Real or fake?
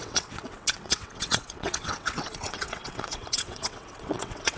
fake